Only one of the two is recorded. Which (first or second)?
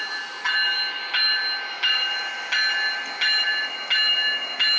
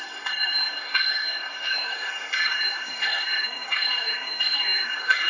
first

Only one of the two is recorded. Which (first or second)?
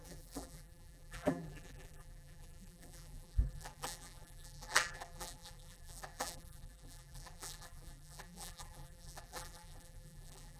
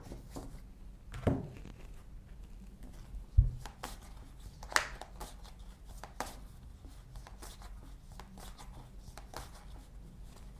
second